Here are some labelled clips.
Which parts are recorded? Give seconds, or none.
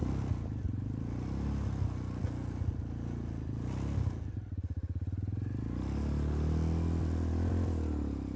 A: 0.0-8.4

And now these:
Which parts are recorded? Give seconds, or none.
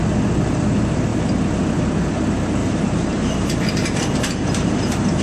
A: 0.0-2.6